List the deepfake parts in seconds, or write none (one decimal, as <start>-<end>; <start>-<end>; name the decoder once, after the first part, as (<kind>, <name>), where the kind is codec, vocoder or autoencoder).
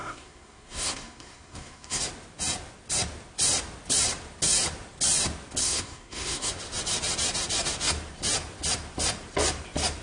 0.0-2.0 (codec, SNAC); 5.6-6.5